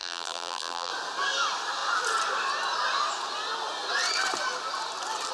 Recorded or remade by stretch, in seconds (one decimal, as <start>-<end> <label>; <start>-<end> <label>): 0.0-0.9 remade; 0.9-5.3 recorded